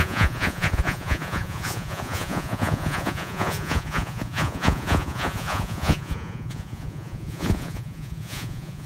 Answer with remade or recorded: remade